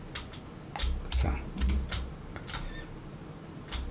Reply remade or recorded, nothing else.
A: recorded